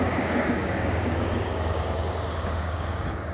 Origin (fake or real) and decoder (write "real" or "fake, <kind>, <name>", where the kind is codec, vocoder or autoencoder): fake, codec, DAC